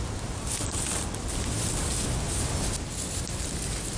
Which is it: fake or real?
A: real